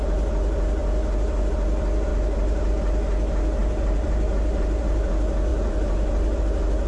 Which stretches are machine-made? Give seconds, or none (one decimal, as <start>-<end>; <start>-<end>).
2.1-2.7; 3.6-5.1; 5.5-6.4